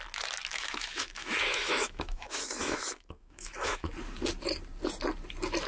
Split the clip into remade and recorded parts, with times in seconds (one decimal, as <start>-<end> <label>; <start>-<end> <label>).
0.0-0.5 recorded; 0.5-3.9 remade; 3.9-5.7 recorded

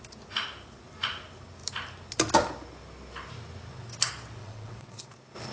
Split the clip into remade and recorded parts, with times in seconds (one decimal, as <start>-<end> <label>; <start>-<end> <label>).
0.0-4.4 recorded; 4.4-5.1 remade; 5.1-5.5 recorded